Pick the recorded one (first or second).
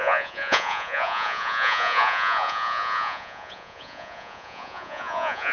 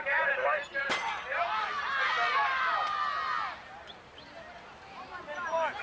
second